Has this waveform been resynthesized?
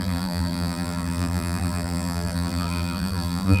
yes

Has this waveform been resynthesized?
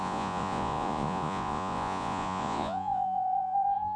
yes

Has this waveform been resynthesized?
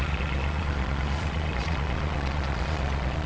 yes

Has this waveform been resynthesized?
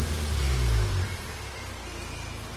no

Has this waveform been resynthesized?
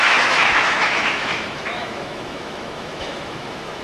yes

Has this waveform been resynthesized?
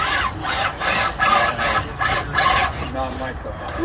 yes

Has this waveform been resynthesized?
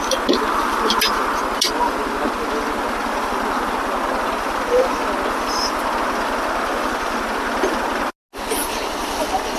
no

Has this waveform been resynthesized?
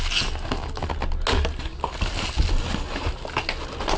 no